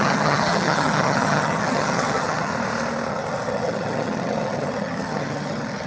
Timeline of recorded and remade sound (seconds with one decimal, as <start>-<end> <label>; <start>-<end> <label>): 0.0-2.5 remade; 2.5-3.1 recorded; 3.1-5.9 remade